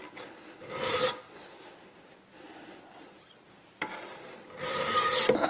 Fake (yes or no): no